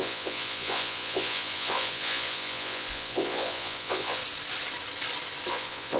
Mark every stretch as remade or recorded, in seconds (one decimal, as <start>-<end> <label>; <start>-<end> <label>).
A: 0.0-4.2 remade; 4.2-5.5 recorded; 5.5-6.0 remade